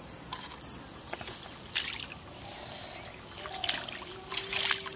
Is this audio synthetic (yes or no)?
no